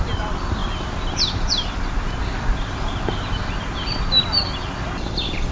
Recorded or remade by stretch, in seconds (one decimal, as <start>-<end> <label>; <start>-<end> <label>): 0.0-5.5 recorded